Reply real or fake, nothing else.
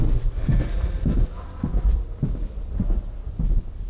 real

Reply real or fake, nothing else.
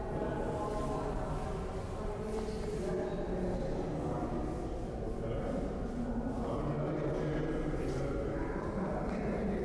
real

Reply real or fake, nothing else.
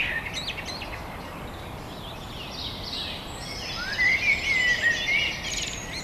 real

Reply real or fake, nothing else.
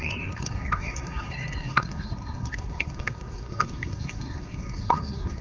fake